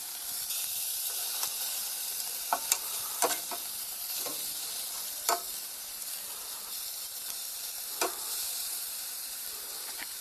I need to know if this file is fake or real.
fake